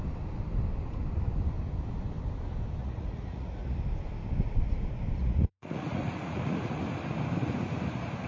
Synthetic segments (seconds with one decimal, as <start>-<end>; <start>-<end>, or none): 2.8-3.8; 5.2-6.8